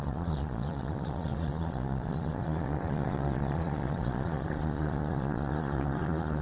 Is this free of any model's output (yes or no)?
no